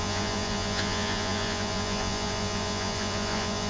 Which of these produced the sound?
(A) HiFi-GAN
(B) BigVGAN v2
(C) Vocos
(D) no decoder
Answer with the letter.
C